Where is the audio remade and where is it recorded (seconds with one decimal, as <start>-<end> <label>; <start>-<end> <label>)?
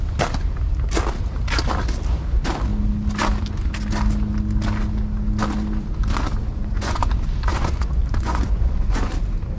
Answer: 0.0-6.4 recorded; 6.4-7.1 remade; 7.1-7.5 recorded; 7.5-9.1 remade; 9.1-9.6 recorded